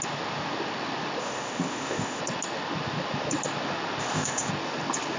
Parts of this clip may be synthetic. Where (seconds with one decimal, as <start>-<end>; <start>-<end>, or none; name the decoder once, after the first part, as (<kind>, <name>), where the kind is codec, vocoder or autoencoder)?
1.2-2.2 (codec, ZipCodec); 4.0-4.5